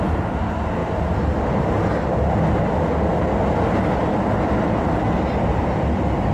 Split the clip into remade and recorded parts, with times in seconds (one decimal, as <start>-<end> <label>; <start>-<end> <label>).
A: 0.0-6.3 recorded